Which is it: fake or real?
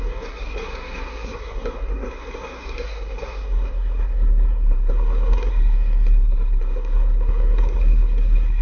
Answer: fake